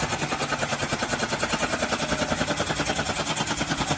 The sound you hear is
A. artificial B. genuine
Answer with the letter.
B